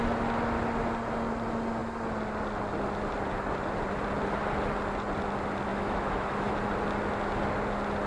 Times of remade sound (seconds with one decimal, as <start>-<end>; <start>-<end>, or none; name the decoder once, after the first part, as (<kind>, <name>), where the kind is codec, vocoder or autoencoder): 5.7-6.5 (autoencoder, DAC-VAE)